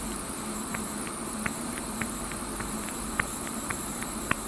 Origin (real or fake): fake